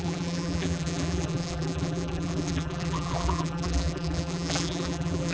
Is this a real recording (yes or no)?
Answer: no